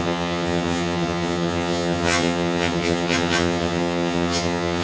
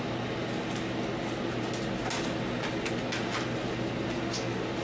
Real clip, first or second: second